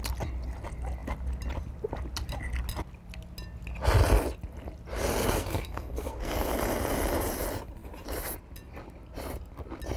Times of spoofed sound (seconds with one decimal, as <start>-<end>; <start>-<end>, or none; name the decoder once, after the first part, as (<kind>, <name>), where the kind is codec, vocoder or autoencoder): 5.2-6.5 (codec, SNAC)